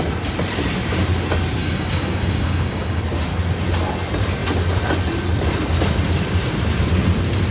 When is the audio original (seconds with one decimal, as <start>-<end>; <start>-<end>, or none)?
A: 0.0-1.6; 3.0-7.5